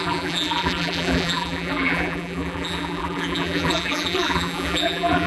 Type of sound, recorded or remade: remade